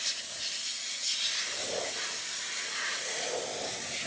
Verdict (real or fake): real